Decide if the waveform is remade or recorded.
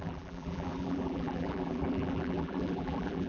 remade